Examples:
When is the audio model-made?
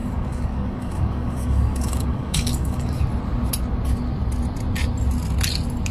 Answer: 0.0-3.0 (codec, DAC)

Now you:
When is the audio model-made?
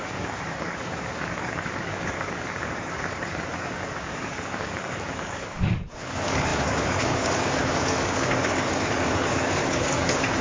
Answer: 0.0-10.4 (codec, DAC)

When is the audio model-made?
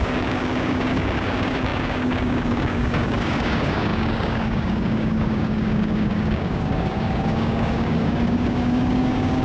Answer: 0.0-9.4 (codec, DAC)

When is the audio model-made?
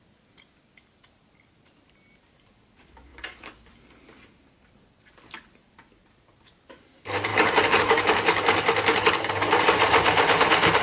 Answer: 3.1-3.7 (codec, DAC); 7.3-9.3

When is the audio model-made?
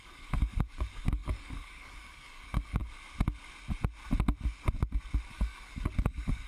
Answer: 0.0-2.8 (codec, DAC); 5.3-6.5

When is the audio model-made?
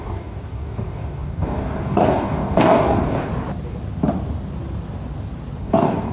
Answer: 0.0-3.3 (codec, DAC); 5.6-6.1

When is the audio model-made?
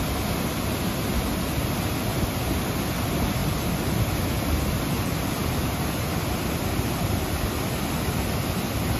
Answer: none